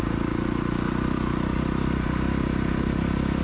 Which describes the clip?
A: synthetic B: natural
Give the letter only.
B